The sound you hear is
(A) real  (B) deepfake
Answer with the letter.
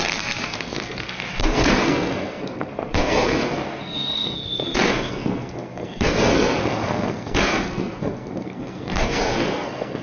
B